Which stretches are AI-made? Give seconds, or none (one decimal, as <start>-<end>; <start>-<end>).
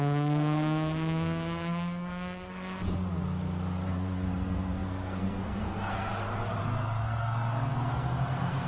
0.0-2.5; 3.9-6.1; 6.6-8.7